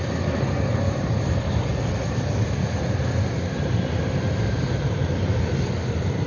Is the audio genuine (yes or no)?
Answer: no